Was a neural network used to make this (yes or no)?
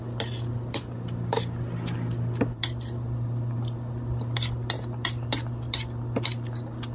no